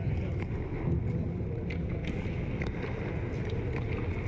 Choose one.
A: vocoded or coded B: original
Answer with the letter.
B